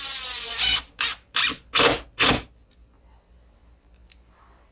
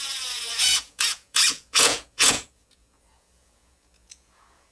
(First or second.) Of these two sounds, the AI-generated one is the second